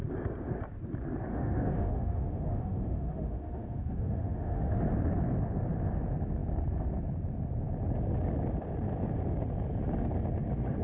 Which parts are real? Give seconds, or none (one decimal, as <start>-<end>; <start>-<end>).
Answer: 0.0-1.3; 4.8-10.8